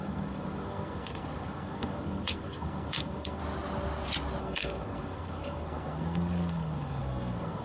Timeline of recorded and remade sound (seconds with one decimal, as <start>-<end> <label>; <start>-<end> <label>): 0.0-3.4 remade; 3.4-4.4 recorded; 4.4-7.6 remade

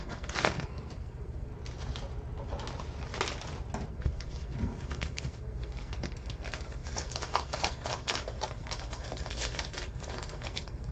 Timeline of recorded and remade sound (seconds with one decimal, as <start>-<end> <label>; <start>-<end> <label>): 0.0-1.5 remade; 1.5-3.9 recorded; 3.9-10.9 remade

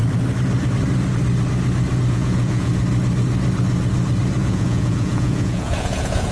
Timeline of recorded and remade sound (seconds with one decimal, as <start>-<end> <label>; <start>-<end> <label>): 0.0-2.1 recorded; 2.1-2.7 remade; 2.7-4.4 recorded; 4.4-6.3 remade